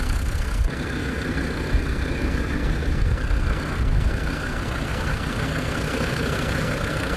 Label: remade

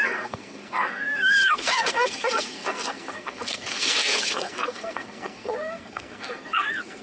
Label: remade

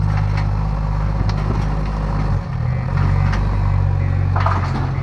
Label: recorded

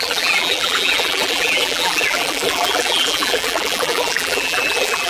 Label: remade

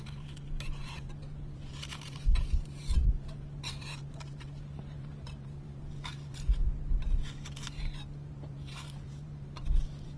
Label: remade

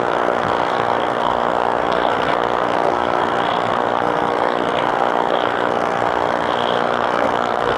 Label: remade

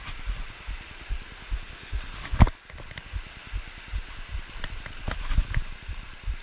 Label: recorded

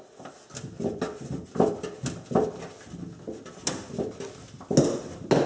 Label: recorded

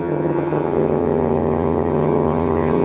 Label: remade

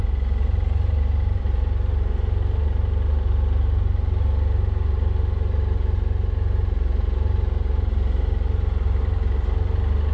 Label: recorded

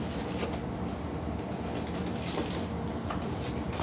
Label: recorded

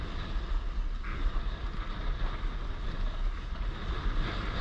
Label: recorded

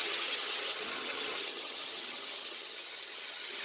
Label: remade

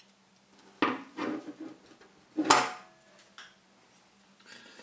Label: recorded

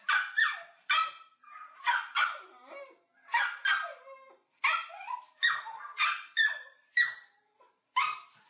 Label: remade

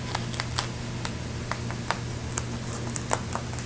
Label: recorded